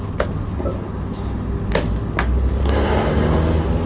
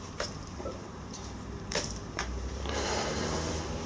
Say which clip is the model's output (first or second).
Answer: second